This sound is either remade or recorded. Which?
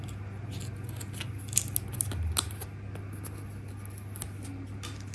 recorded